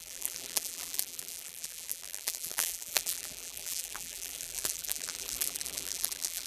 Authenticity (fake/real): fake